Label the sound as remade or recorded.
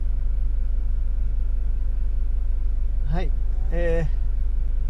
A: recorded